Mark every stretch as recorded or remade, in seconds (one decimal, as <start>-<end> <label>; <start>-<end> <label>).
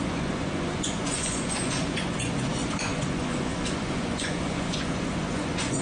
0.0-5.8 remade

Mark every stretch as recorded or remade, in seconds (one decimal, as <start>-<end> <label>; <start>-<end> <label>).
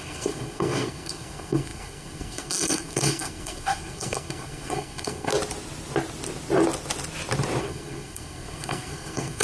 0.0-5.3 remade; 5.3-7.6 recorded; 7.6-9.4 remade